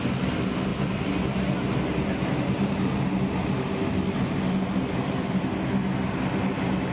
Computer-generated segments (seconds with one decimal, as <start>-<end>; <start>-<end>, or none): none